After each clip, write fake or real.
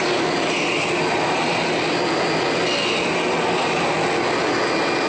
real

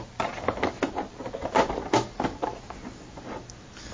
real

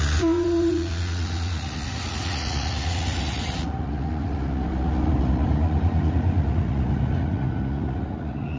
fake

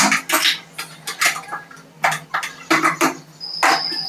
real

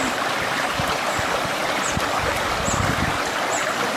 real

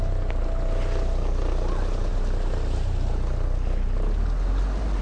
real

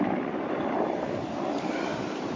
real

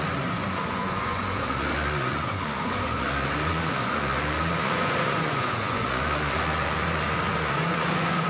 fake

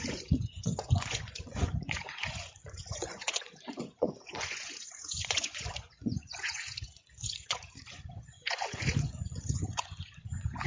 fake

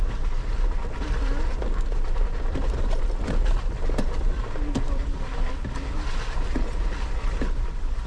real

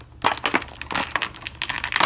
real